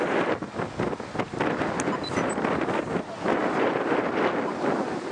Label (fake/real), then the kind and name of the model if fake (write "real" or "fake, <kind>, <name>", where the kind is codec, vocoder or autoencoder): real